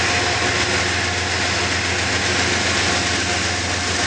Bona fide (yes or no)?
yes